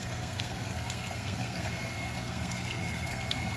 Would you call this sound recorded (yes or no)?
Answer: no